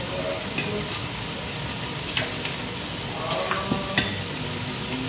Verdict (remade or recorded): recorded